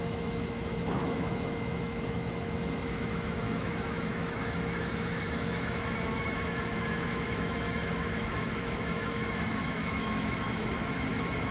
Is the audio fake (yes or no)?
yes